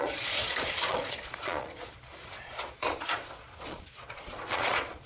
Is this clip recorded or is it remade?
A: remade